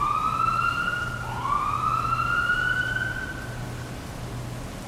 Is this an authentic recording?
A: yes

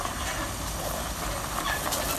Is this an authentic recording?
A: yes